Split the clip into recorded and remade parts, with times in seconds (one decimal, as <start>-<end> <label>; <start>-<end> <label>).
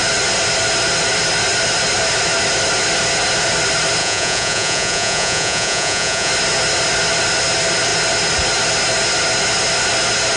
0.0-4.0 recorded; 4.0-6.3 remade; 6.3-10.4 recorded